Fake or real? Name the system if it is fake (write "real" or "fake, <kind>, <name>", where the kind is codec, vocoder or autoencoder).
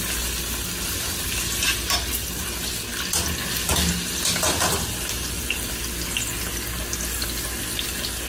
real